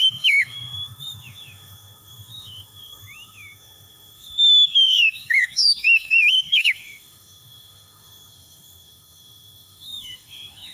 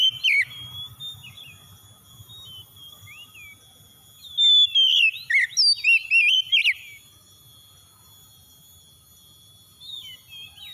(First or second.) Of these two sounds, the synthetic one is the first